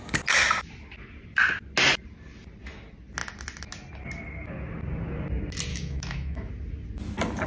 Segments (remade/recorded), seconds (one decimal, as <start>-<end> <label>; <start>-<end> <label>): 0.0-5.7 recorded; 5.7-6.5 remade; 6.5-7.5 recorded